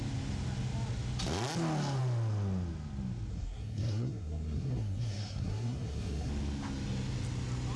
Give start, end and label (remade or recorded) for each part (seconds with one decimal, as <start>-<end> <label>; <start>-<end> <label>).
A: 0.0-3.3 recorded; 3.3-6.3 remade; 6.3-7.8 recorded